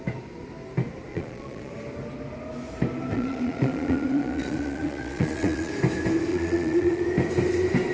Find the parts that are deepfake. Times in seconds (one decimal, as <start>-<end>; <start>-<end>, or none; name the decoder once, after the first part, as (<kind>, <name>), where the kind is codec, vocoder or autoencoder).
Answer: 1.1-1.7 (vocoder, Vocos); 3.1-5.7; 6.3-7.0